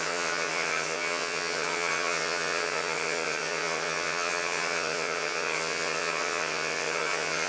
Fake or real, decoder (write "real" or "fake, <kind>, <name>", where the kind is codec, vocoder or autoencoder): fake, vocoder, HiFi-GAN